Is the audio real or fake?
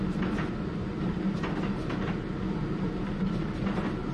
real